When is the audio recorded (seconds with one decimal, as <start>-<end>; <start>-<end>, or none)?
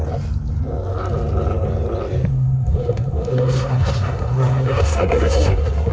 0.0-2.3